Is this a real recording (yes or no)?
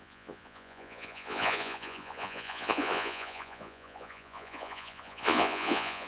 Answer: no